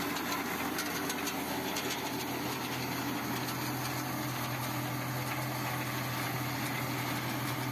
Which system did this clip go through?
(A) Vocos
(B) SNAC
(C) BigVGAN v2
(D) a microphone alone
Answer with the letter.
D